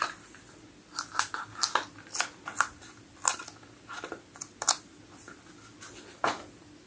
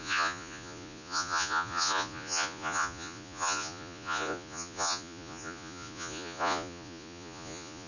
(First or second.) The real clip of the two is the first